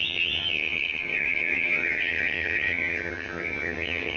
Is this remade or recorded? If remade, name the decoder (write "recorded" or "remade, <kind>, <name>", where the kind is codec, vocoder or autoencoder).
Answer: remade, vocoder, HiFi-GAN